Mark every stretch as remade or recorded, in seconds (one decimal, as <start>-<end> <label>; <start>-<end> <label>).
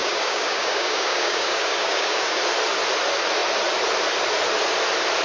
0.0-2.4 remade; 2.4-5.2 recorded